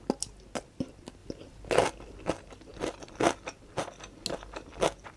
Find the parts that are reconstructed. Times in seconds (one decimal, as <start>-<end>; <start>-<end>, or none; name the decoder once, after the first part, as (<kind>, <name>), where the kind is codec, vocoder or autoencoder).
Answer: none